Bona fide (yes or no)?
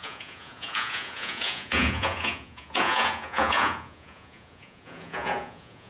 no